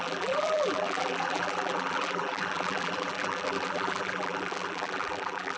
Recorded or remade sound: remade